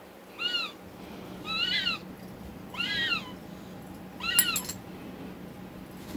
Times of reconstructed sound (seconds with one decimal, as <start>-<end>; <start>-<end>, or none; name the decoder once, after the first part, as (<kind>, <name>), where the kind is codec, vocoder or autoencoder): none